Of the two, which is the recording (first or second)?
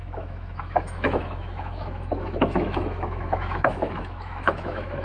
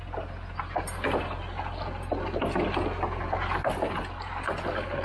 second